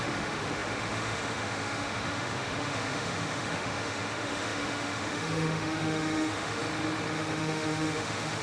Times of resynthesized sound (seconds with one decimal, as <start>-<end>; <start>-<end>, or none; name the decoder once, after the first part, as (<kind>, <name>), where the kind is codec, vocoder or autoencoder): 0.0-6.6 (autoencoder, DAC-VAE); 7.1-8.4